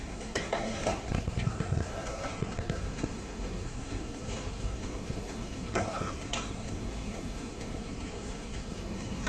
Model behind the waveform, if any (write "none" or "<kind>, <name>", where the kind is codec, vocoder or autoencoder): codec, SNAC